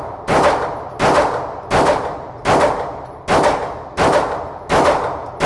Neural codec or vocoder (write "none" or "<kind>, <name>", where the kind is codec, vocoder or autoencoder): none